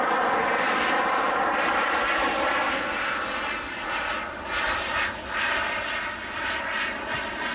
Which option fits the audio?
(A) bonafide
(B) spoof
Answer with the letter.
A